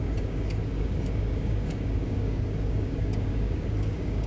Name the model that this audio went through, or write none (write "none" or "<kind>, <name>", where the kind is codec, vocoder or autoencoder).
codec, DAC